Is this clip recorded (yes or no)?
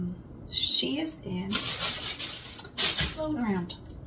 yes